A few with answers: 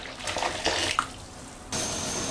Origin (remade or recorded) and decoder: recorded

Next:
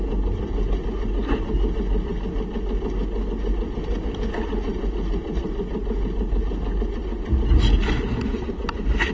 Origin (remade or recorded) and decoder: recorded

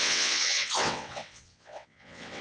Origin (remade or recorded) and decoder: remade, vocoder, WaveNeXt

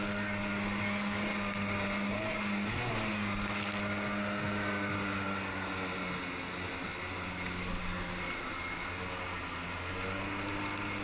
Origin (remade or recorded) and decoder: recorded